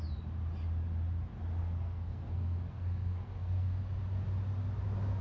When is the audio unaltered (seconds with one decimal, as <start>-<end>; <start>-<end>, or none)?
0.0-1.6; 3.8-5.2